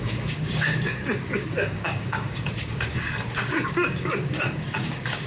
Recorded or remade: remade